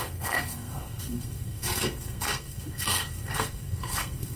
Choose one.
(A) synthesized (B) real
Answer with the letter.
A